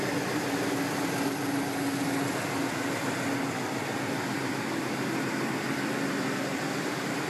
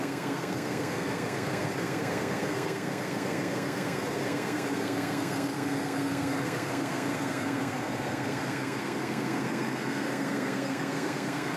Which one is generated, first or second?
second